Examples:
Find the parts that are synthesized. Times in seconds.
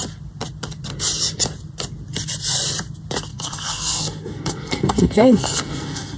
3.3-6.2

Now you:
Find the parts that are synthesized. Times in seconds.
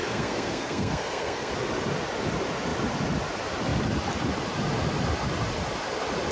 0.0-1.5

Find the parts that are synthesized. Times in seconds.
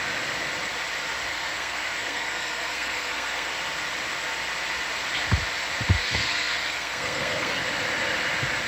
1.3-3.5; 6.0-7.6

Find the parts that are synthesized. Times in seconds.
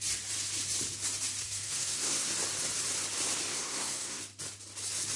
1.4-2.3; 3.5-4.2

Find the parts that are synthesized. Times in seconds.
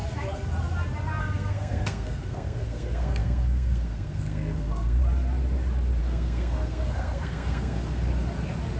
1.2-5.0; 6.0-8.1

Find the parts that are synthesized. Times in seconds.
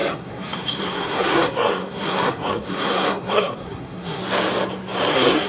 0.0-4.2; 5.1-5.5